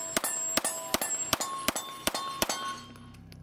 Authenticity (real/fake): real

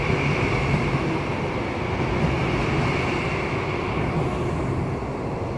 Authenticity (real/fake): real